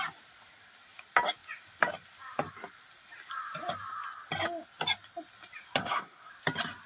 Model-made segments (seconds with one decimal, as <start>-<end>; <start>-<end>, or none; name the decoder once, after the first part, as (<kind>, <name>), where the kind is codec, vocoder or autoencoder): 5.8-6.3 (codec, SNAC)